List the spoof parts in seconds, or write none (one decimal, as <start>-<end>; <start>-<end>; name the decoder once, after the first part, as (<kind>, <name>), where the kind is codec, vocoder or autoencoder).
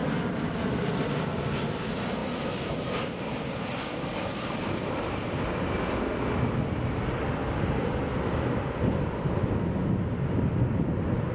none